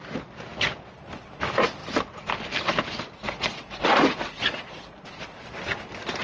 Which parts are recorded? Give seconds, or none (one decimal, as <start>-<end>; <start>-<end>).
0.0-0.5; 1.4-1.8; 5.5-6.2